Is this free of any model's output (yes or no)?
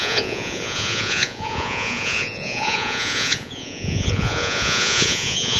no